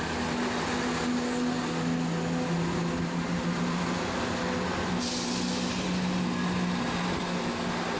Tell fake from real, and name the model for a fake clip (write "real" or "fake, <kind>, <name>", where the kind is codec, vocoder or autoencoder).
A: real